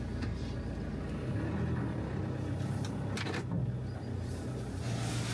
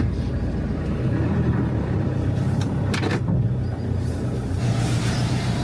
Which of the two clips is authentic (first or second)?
first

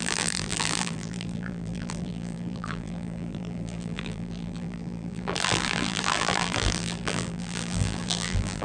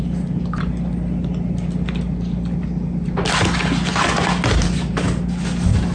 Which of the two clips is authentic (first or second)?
second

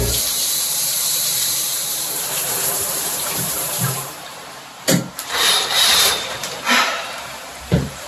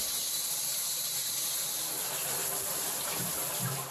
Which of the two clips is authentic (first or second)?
second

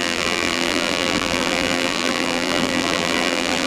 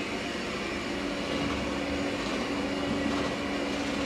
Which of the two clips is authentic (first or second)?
second